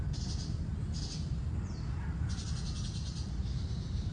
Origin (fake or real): real